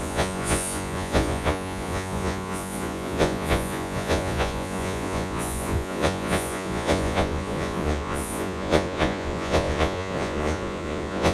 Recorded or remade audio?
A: remade